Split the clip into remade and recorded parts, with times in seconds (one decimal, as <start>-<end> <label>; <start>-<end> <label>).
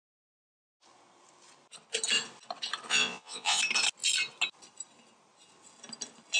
0.0-2.9 recorded; 2.9-3.6 remade; 3.6-6.4 recorded